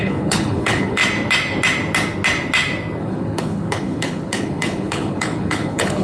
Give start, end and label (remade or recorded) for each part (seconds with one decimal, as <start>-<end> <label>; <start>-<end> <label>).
0.0-1.0 remade; 1.0-3.0 recorded; 3.0-6.0 remade